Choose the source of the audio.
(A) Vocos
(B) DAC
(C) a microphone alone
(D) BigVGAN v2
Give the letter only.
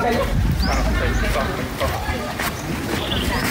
D